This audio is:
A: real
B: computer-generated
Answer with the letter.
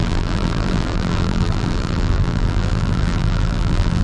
B